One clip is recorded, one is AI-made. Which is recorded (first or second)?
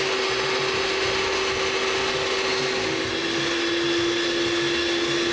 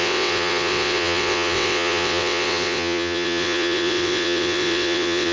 first